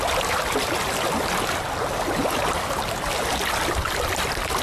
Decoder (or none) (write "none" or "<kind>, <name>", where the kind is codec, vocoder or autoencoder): none